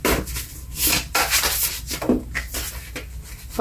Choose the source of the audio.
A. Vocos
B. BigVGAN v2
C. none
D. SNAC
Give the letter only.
C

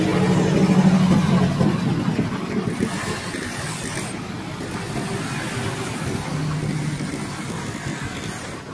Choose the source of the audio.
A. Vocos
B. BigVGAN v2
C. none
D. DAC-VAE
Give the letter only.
C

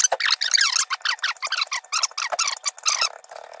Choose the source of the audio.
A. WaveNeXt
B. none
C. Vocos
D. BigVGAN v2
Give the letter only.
B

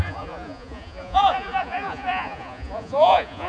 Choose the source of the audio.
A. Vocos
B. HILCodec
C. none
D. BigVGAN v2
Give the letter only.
A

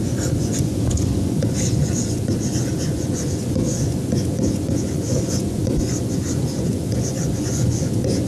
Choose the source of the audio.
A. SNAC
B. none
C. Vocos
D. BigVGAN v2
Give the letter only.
C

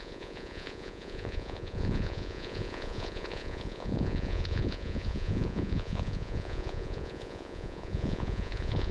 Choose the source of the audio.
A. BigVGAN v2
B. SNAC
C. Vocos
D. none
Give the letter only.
C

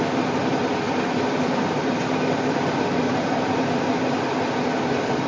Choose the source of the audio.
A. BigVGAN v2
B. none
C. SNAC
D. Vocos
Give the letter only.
B